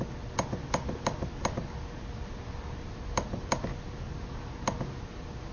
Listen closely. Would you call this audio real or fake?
real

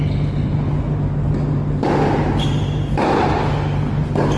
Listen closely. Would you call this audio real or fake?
real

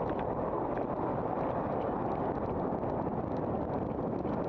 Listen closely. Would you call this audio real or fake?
real